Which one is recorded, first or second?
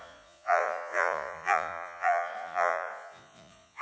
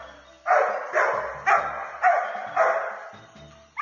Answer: second